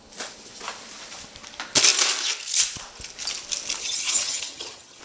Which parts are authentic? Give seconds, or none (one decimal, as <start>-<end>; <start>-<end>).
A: 0.0-3.8